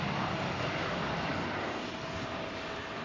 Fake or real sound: real